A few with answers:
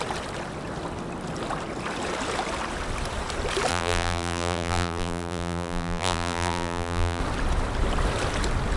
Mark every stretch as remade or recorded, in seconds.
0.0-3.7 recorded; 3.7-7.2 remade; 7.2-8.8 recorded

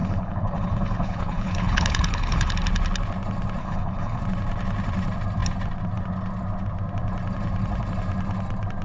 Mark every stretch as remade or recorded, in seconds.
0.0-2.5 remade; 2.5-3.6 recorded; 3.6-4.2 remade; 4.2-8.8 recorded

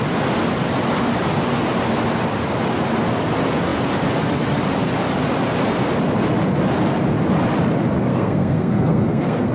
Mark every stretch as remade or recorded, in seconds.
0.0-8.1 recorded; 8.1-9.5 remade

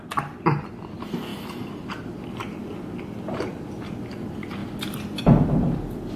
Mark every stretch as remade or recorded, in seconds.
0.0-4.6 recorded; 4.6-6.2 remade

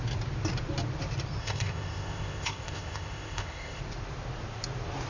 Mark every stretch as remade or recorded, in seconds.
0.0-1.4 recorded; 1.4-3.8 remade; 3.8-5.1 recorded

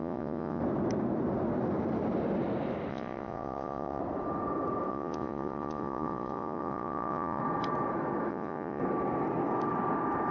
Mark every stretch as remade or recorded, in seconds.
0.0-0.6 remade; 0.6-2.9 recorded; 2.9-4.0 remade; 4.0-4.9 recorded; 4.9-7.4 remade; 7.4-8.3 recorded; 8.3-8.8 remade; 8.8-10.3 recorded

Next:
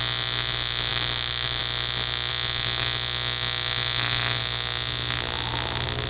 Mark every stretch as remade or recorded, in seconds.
0.0-6.1 recorded

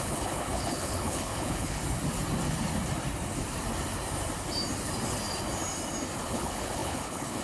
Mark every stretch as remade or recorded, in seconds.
0.0-1.8 remade; 1.8-6.2 recorded; 6.2-7.4 remade